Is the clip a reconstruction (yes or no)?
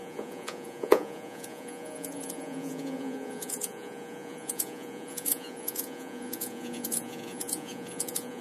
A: yes